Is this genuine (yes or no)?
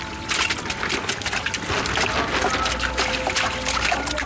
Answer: yes